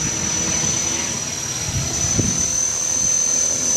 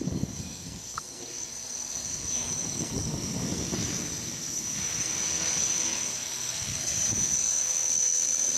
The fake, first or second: second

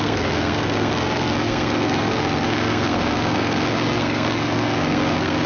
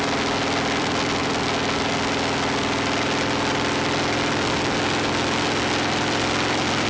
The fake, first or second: first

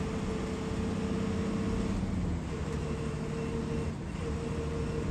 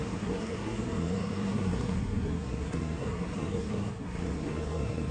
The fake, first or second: second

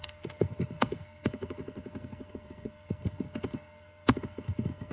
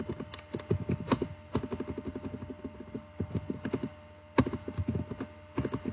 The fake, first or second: first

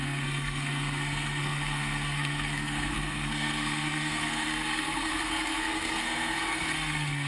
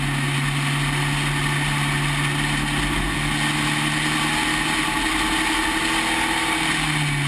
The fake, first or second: first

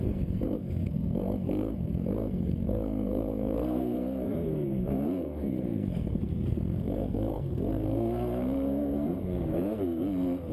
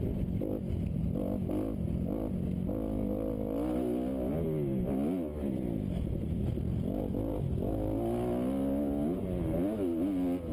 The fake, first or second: first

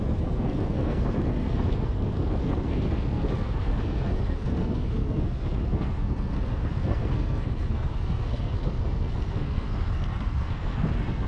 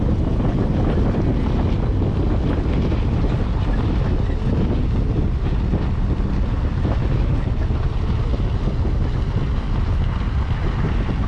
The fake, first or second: first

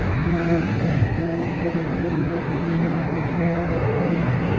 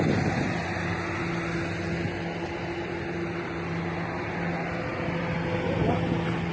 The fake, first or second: first